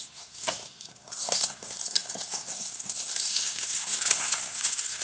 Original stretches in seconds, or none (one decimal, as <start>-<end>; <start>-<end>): none